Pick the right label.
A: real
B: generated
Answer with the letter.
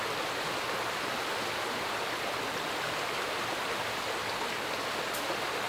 A